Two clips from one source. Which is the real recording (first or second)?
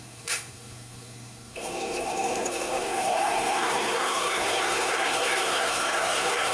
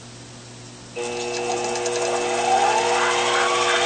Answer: second